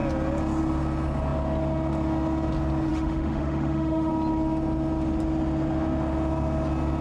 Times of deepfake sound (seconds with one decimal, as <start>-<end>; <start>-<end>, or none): 2.9-4.1